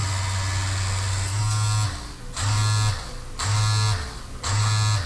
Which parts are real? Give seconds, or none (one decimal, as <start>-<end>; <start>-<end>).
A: 0.0-5.1